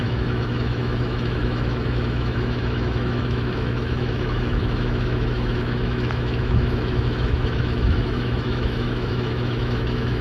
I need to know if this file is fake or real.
fake